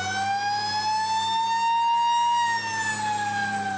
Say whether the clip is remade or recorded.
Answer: recorded